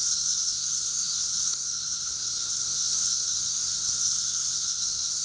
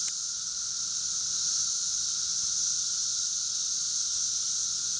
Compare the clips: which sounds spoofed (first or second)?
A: first